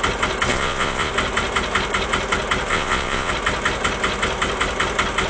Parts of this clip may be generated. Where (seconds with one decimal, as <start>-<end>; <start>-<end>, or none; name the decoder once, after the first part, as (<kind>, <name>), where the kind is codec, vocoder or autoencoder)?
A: 0.5-1.1 (vocoder, Vocos); 2.7-3.3